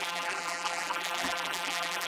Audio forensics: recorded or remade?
remade